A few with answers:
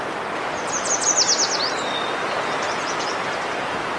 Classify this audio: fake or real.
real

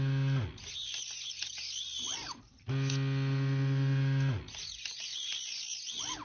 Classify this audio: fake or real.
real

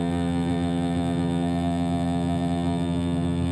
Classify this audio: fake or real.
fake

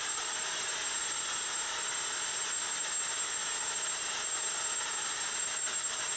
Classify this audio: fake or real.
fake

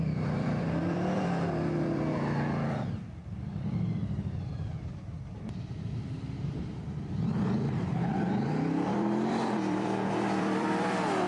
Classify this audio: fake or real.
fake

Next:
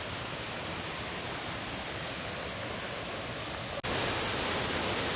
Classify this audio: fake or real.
real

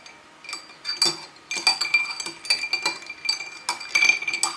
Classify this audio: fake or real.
real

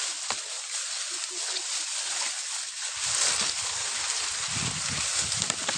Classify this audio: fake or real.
real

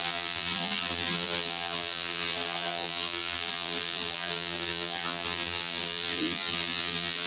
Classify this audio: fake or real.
fake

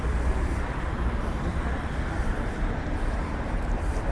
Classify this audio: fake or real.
fake